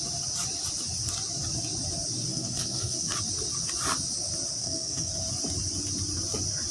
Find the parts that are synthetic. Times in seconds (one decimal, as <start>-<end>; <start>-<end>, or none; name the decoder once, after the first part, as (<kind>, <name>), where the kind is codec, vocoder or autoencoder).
2.3-3.1 (codec, SNAC); 4.6-5.1